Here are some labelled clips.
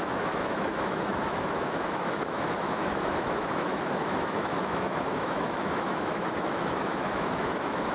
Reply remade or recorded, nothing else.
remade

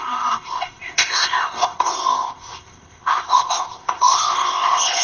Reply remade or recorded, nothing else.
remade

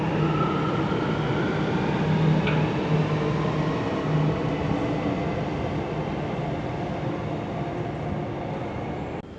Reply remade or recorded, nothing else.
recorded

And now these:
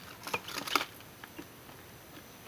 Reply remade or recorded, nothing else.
recorded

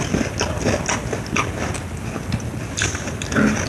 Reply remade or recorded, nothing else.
recorded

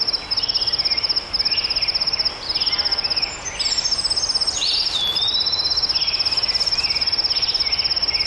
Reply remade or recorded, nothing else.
recorded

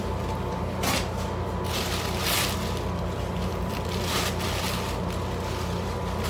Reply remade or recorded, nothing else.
recorded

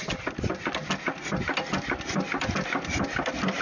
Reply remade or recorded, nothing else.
recorded